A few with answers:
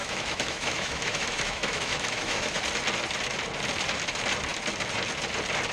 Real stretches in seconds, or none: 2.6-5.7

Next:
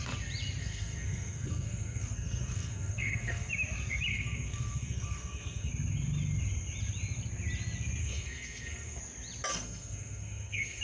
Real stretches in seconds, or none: 0.0-0.6; 3.5-4.1; 5.7-8.0; 9.0-9.5

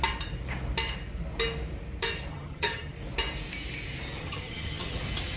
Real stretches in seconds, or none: 0.0-2.3; 2.9-4.2; 5.0-5.4